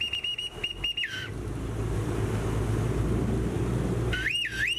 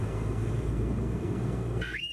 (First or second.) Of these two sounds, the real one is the first